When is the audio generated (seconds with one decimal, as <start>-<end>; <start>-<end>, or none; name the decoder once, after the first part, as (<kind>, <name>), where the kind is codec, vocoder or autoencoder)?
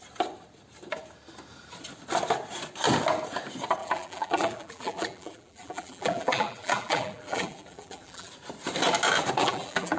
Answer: 3.8-8.3 (vocoder, BigVGAN v2); 9.4-10.0